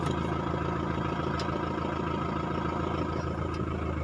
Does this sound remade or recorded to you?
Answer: recorded